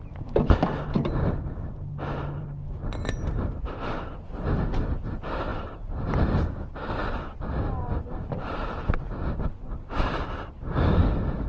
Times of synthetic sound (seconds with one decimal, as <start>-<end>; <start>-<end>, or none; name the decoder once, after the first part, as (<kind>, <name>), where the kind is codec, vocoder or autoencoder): 0.0-11.5 (vocoder, BigVGAN v2)